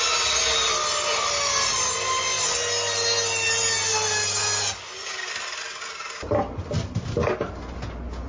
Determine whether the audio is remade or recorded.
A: recorded